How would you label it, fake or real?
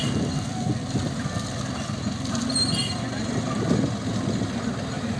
real